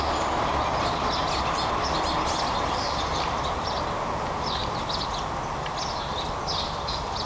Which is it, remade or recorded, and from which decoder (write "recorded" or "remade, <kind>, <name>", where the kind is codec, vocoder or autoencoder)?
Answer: recorded